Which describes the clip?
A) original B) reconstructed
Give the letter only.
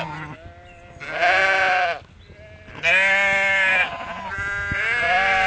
A